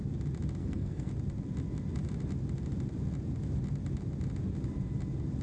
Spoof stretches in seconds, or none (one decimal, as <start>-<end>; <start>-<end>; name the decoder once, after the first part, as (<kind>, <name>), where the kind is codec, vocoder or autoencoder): 0.6-1.1 (codec, SNAC)